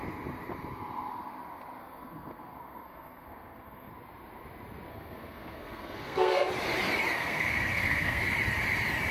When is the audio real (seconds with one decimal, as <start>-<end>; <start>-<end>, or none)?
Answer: 0.0-1.8; 3.9-4.9; 6.5-7.2; 8.2-9.1